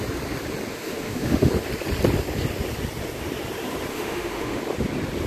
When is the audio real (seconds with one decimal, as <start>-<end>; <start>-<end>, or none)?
0.0-0.7; 1.5-3.9; 4.6-5.3